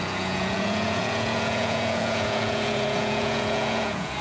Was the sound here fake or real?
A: fake